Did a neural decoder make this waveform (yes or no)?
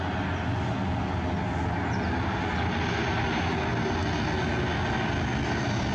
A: no